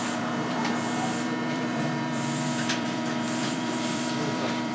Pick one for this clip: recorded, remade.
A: remade